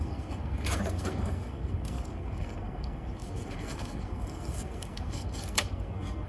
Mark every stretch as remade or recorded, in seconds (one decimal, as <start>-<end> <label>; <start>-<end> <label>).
0.0-6.3 remade